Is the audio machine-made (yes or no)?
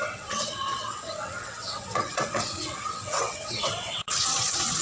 yes